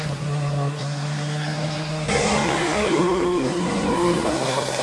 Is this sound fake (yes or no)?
yes